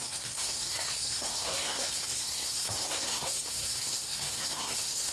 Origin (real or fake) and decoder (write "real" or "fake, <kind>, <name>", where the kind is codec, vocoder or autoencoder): fake, codec, SNAC